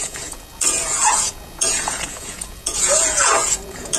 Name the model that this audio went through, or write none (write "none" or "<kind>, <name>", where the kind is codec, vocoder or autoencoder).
vocoder, Vocos